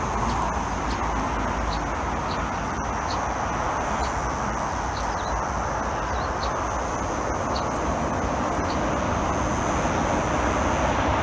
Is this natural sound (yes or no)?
yes